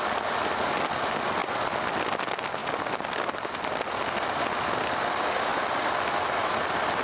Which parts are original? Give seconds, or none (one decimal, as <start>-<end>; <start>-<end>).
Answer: 0.0-7.0